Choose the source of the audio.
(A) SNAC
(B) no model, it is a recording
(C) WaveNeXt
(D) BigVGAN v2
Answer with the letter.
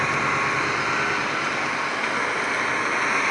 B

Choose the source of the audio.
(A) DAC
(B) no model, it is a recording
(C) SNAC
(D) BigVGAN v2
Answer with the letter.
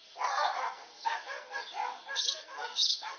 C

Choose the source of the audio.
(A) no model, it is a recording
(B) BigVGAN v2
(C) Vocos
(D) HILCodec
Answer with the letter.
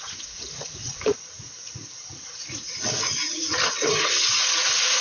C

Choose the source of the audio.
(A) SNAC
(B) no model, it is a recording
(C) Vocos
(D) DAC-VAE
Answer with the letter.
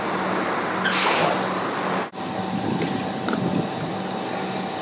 B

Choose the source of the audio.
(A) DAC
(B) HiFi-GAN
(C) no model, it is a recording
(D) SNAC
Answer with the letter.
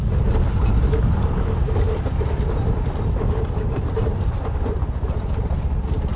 C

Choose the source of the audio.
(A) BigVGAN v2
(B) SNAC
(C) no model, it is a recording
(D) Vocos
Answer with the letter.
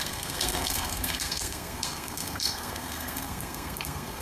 B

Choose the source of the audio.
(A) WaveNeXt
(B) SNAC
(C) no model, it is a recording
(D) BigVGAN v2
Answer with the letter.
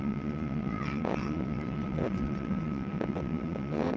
A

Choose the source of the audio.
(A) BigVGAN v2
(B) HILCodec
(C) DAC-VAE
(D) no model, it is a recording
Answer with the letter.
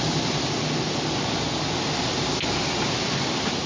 D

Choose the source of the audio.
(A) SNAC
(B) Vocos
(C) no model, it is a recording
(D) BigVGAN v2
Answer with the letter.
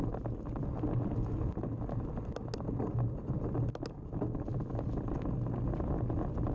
C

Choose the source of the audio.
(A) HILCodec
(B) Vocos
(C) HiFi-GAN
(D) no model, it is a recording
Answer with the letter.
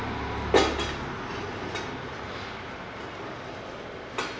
D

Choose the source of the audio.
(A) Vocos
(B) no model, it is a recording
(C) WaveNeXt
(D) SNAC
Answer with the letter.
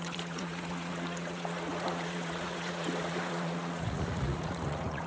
A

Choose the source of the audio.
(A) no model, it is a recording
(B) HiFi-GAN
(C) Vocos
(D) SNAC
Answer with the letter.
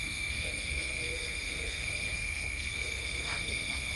D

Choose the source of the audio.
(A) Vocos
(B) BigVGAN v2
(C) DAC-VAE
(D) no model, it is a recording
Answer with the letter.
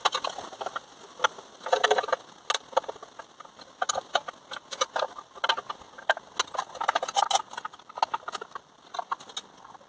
D